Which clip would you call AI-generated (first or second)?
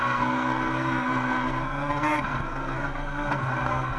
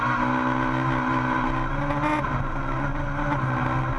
first